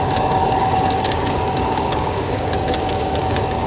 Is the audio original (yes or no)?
no